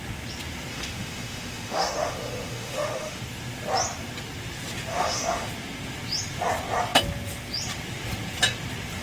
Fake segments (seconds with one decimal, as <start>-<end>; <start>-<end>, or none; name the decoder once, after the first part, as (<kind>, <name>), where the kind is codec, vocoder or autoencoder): 0.7-3.2 (autoencoder, DAC-VAE); 4.9-5.5